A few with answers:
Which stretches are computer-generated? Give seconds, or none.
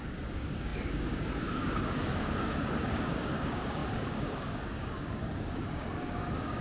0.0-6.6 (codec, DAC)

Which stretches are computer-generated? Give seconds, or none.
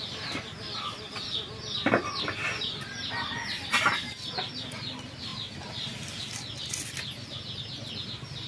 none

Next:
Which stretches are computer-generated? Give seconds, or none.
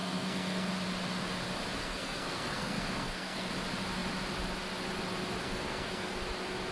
0.0-0.7 (codec, SNAC); 1.8-3.5; 5.4-6.2